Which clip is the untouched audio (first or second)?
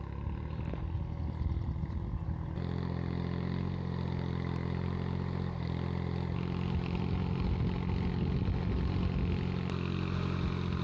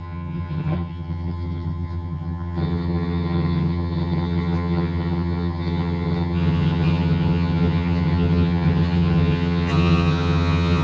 first